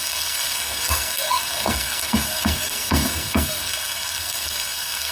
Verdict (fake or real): fake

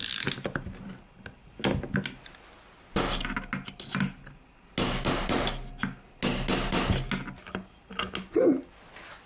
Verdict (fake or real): real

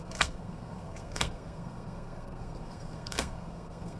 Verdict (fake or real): fake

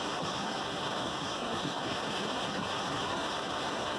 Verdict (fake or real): fake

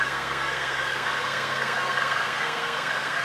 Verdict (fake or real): fake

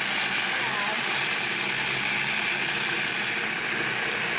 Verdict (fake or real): real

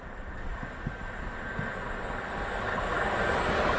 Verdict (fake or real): real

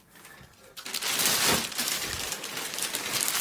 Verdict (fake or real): real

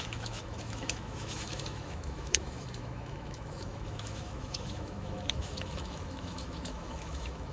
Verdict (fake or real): fake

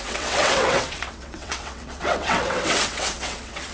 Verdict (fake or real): fake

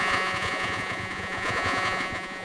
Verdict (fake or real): fake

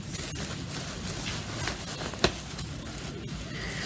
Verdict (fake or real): real